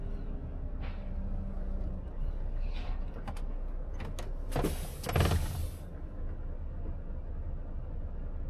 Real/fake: real